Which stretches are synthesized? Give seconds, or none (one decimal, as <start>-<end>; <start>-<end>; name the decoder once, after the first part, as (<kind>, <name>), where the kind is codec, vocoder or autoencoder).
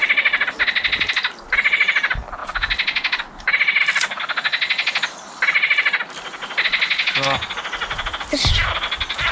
none